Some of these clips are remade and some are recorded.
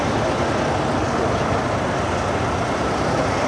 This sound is recorded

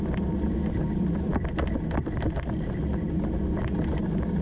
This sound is recorded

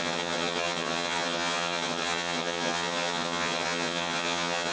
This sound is remade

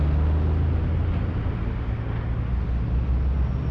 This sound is recorded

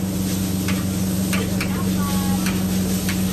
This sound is recorded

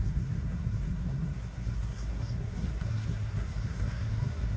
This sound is remade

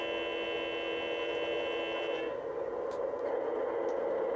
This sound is recorded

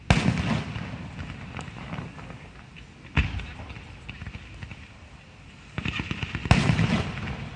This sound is recorded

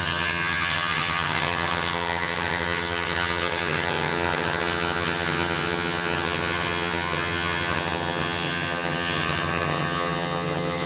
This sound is remade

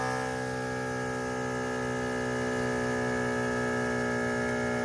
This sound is recorded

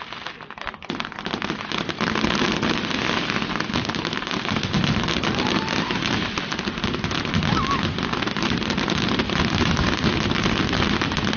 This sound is recorded